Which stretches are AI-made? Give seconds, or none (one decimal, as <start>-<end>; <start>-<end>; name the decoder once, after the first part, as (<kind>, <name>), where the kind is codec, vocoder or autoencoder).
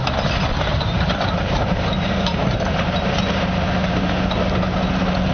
0.7-3.4 (vocoder, BigVGAN v2)